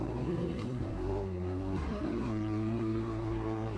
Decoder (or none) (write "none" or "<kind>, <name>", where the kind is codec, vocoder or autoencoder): codec, SNAC